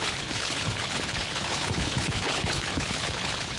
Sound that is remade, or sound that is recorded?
remade